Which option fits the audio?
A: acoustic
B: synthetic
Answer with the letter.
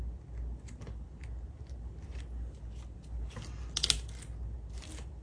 A